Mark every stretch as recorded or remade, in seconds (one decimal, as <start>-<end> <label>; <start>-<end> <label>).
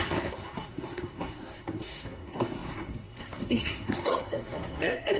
0.0-5.2 remade